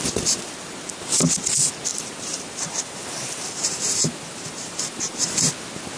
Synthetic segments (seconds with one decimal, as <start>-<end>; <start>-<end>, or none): 1.9-5.5